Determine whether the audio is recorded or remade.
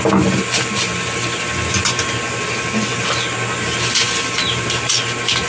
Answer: recorded